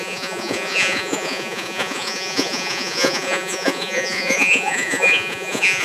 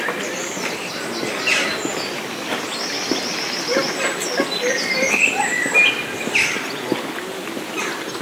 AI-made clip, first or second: first